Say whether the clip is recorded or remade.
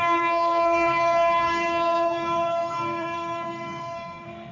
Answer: remade